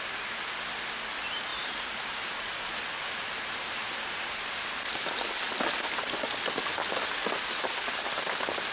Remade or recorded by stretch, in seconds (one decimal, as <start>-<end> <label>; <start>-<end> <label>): 0.0-8.7 recorded